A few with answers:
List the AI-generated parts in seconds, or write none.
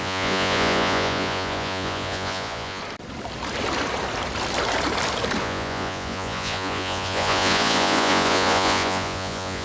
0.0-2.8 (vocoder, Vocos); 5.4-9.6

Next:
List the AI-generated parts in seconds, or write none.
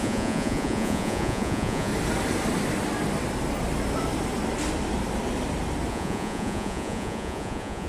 0.0-1.9 (vocoder, Vocos); 5.9-7.9